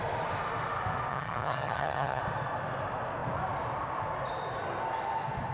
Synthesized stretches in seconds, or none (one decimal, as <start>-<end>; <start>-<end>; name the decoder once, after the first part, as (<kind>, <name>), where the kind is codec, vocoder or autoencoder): 1.1-2.2 (vocoder, HiFi-GAN)